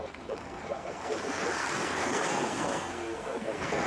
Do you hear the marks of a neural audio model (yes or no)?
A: yes